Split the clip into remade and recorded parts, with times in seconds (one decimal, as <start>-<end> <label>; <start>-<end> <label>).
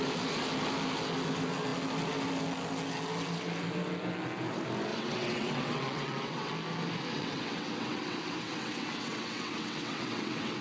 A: 0.0-4.9 recorded; 4.9-6.5 remade; 6.5-7.1 recorded; 7.1-10.6 remade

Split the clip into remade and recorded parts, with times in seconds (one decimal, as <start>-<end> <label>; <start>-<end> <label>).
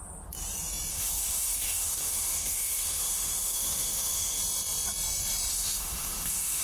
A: 0.0-0.9 recorded; 0.9-4.4 remade; 4.4-5.5 recorded; 5.5-6.6 remade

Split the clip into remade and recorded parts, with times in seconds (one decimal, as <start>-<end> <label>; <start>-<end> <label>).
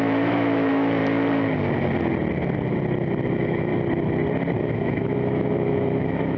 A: 0.0-1.0 remade; 1.0-3.3 recorded; 3.3-3.7 remade; 3.7-4.6 recorded; 4.6-6.4 remade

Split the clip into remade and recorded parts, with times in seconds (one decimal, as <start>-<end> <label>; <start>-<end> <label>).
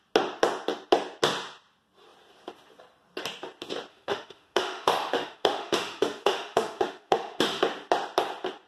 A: 0.0-3.9 recorded; 3.9-7.6 remade; 7.6-8.7 recorded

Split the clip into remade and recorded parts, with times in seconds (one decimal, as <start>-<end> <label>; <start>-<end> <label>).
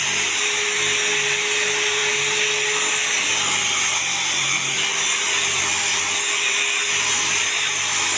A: 0.0-8.2 recorded